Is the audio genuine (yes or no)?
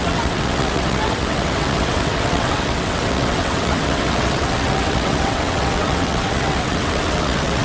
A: no